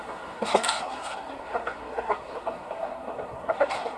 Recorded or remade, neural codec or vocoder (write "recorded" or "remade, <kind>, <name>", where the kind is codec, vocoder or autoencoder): remade, codec, SNAC